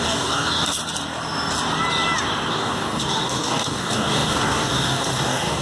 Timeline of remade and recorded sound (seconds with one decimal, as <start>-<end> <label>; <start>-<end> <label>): 0.0-0.8 remade; 0.8-2.5 recorded; 2.5-5.6 remade